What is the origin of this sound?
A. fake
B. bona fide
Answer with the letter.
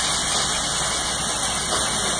B